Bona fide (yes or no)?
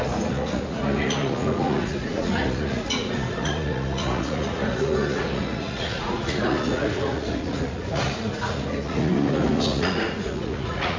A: no